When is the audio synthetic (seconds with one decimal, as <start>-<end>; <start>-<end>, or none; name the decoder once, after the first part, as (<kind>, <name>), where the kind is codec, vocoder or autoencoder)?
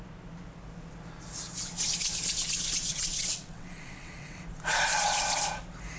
2.9-4.4 (vocoder, WaveNeXt)